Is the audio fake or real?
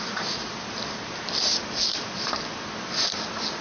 real